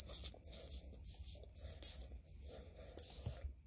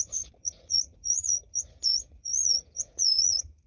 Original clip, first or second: first